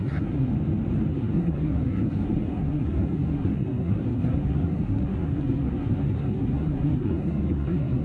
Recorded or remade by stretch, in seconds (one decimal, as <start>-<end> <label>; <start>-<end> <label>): 0.0-0.5 remade; 0.5-1.1 recorded; 1.1-8.0 remade